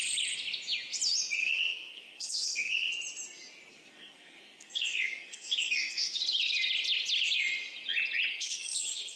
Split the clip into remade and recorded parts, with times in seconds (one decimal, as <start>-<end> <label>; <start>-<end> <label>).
0.0-1.4 recorded; 1.4-2.9 remade; 2.9-3.7 recorded; 3.7-6.2 remade; 6.2-8.3 recorded; 8.3-9.2 remade